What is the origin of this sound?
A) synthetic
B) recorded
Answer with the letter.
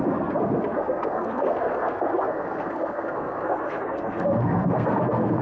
A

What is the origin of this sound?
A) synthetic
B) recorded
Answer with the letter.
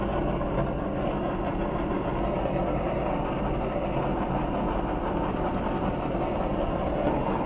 B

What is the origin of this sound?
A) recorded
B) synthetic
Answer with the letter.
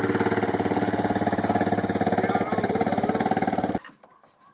A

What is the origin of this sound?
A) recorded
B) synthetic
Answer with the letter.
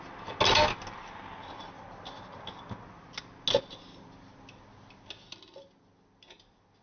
A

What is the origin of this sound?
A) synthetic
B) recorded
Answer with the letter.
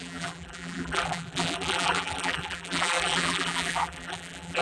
A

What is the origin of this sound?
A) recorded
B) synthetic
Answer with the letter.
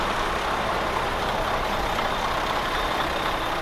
B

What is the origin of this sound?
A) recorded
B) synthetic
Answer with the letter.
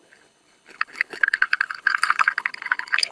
B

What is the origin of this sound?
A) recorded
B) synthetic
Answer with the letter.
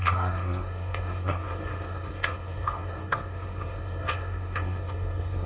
B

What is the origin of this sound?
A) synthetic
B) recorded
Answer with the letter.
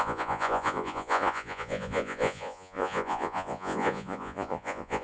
A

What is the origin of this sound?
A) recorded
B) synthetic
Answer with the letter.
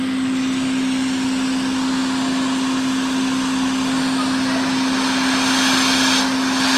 A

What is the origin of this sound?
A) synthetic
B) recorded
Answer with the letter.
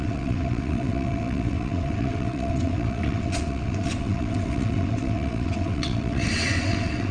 A